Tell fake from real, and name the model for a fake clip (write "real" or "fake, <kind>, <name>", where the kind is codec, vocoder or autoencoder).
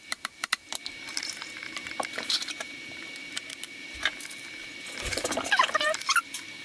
fake, vocoder, BigVGAN v2